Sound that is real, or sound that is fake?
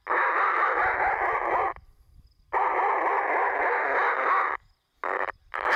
real